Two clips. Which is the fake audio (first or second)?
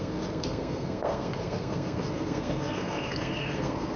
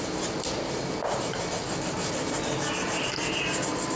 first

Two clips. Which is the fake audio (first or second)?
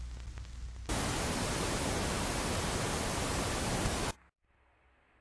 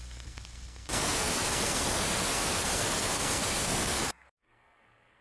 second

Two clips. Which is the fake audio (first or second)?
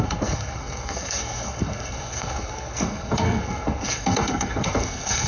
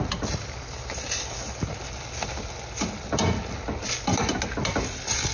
first